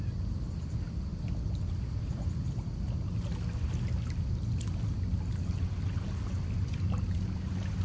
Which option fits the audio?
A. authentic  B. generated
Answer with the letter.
A